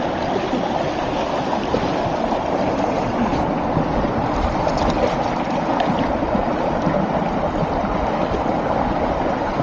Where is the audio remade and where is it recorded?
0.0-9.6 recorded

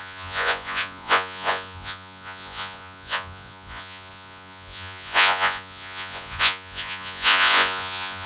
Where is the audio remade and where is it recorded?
0.0-8.3 remade

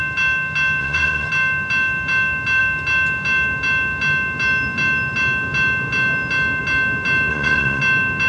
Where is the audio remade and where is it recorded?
0.0-0.8 recorded; 0.8-1.3 remade; 1.3-7.3 recorded; 7.3-7.8 remade; 7.8-8.3 recorded